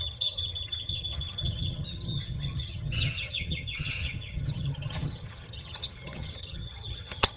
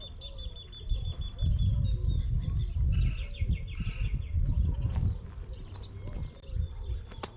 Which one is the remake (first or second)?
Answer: first